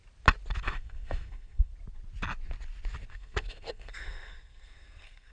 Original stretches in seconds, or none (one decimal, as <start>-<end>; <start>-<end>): 0.0-0.6; 1.7-3.1